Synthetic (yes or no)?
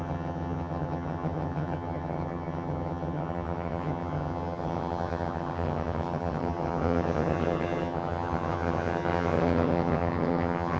yes